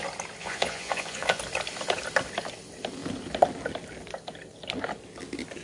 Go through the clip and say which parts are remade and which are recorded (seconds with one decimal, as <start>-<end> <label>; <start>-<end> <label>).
0.0-0.4 recorded; 0.4-1.4 remade; 1.4-5.6 recorded

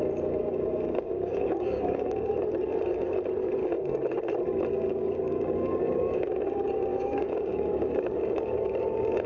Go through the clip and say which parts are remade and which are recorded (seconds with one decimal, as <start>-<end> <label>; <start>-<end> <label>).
0.0-0.4 recorded; 0.4-2.3 remade; 2.3-3.6 recorded; 3.6-4.1 remade; 4.1-4.7 recorded; 4.7-6.3 remade; 6.3-6.9 recorded; 6.9-9.3 remade

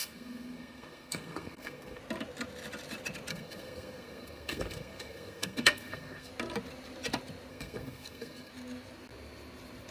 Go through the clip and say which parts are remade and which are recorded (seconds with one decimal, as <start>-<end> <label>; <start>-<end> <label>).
0.0-2.0 remade; 2.0-3.3 recorded; 3.3-6.3 remade; 6.3-7.5 recorded; 7.5-8.5 remade; 8.5-9.9 recorded

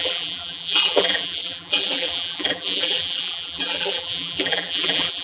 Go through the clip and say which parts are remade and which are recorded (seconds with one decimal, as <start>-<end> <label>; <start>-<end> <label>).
0.0-5.2 remade